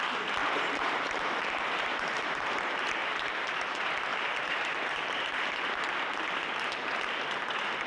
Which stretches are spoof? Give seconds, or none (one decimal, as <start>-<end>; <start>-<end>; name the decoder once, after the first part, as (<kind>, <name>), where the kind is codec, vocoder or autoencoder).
0.4-2.6 (vocoder, BigVGAN v2); 3.0-3.6; 4.1-5.8